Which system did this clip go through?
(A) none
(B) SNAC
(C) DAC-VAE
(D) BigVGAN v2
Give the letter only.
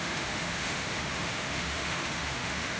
C